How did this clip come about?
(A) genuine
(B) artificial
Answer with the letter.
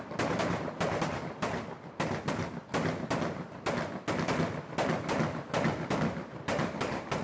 A